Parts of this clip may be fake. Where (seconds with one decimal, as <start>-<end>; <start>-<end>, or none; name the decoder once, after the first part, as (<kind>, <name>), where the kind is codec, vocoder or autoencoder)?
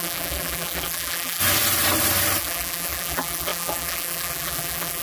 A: 0.0-1.4 (vocoder, BigVGAN v2); 2.4-5.0